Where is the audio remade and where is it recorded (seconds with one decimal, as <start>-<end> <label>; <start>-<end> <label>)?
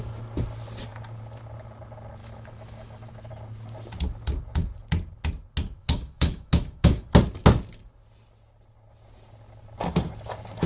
0.0-2.2 recorded; 2.2-3.3 remade; 3.3-5.8 recorded; 5.8-7.2 remade; 7.2-10.7 recorded